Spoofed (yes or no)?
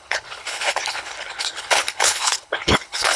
yes